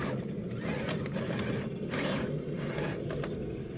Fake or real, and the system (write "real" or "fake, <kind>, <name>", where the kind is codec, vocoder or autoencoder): real